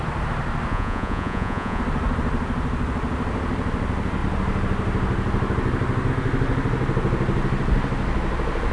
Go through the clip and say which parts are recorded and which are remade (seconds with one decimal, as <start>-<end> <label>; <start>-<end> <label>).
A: 0.0-0.7 recorded; 0.7-1.8 remade; 1.8-8.7 recorded